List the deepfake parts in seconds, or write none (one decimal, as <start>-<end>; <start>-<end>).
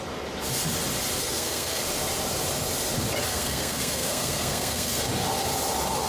1.2-1.8; 3.3-5.0